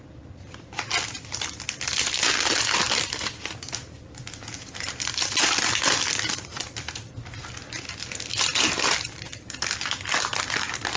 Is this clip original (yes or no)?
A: no